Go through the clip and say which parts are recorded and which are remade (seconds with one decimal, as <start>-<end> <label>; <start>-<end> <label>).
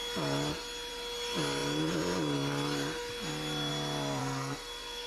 0.0-4.2 recorded; 4.2-5.1 remade